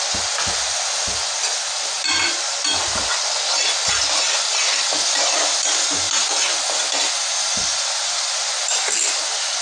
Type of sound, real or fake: real